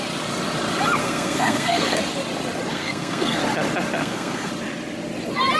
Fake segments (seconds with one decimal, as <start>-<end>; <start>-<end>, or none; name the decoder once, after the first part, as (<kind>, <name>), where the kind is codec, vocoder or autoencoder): 1.0-2.0 (codec, SNAC); 2.7-3.4; 4.0-4.5